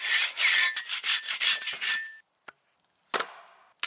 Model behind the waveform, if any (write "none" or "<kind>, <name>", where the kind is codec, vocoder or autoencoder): none